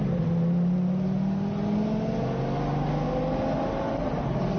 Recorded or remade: recorded